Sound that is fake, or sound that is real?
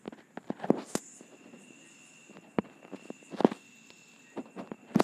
real